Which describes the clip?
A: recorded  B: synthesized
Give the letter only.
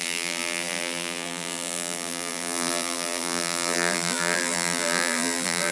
B